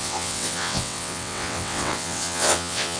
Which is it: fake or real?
fake